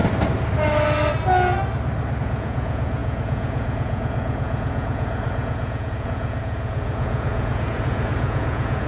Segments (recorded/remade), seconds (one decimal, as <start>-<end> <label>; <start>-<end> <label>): 0.0-2.2 recorded; 2.2-8.9 remade

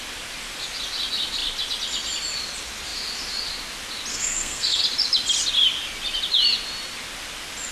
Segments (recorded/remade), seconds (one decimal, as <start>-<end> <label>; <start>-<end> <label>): 0.0-4.1 recorded; 4.1-4.8 remade; 4.8-7.7 recorded

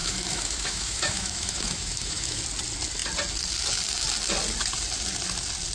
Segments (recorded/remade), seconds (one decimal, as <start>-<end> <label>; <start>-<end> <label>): 0.0-2.4 remade; 2.4-5.7 recorded

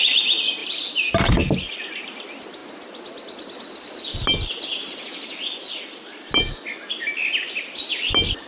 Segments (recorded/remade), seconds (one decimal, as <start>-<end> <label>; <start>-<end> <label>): 0.0-8.5 recorded

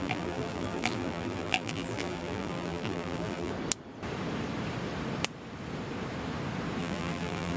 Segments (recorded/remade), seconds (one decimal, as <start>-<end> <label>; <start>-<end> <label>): 0.0-3.5 remade; 3.5-6.8 recorded; 6.8-7.6 remade